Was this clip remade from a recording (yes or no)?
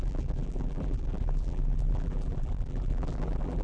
yes